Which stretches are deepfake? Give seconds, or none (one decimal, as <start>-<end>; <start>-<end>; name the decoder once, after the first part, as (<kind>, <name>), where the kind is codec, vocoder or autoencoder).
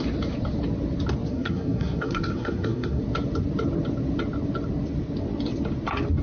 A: 1.3-3.0 (codec, SNAC)